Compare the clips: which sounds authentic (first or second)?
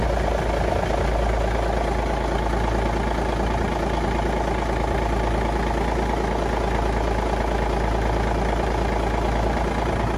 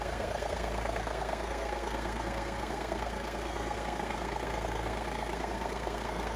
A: first